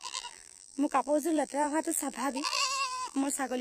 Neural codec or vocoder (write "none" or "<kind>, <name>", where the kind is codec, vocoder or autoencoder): vocoder, BigVGAN v2